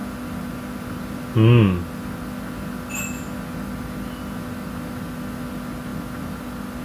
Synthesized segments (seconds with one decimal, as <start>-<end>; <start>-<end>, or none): none